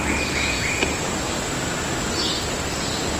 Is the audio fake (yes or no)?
no